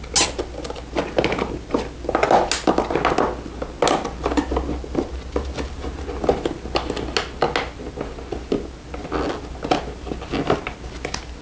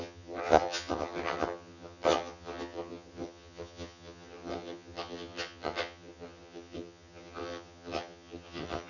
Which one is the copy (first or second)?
second